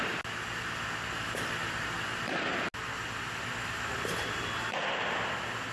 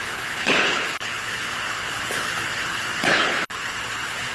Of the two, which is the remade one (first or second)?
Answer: second